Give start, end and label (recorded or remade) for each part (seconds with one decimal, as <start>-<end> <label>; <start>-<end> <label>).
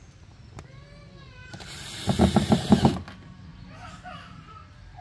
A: 0.0-1.4 recorded; 1.4-2.9 remade; 2.9-5.0 recorded